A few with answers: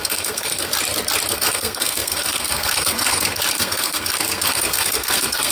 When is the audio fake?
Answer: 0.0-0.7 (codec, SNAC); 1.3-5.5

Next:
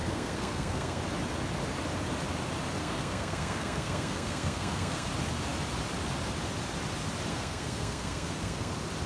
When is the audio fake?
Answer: 0.0-1.0 (codec, SNAC); 2.8-5.1; 7.3-8.7